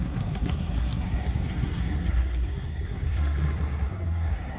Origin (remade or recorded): remade